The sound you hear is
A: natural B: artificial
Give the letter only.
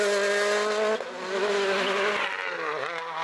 A